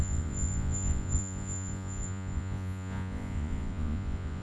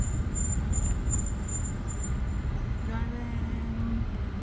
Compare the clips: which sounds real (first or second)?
second